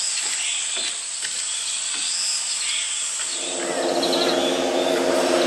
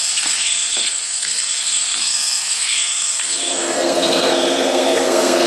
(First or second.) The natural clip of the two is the first